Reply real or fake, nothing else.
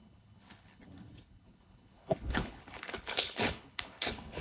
fake